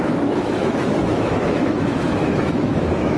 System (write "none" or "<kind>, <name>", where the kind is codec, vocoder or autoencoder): autoencoder, DAC-VAE